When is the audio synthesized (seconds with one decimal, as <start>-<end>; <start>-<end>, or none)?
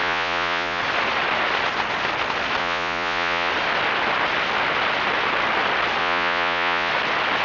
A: 0.0-0.8; 2.6-3.5; 6.0-6.9